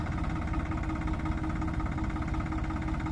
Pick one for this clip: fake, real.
real